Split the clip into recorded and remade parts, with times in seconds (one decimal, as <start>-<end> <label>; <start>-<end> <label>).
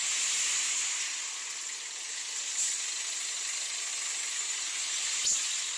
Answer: 0.0-5.8 recorded